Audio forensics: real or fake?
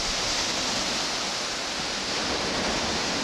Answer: real